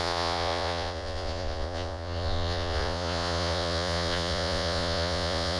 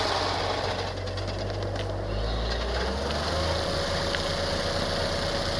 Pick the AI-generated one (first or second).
first